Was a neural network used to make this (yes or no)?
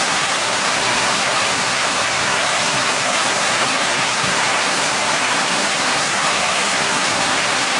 yes